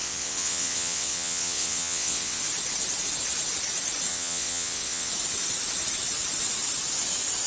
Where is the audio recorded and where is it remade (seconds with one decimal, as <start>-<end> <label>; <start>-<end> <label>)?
0.0-2.4 remade; 2.4-4.1 recorded; 4.1-5.1 remade; 5.1-7.5 recorded